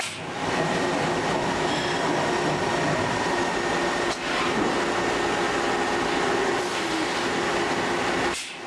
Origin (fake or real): real